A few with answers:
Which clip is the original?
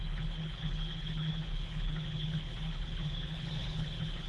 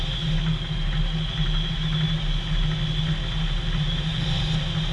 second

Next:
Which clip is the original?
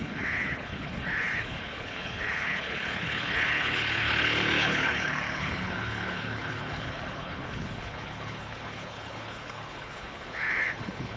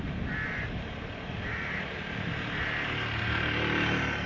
second